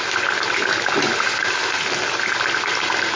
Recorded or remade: recorded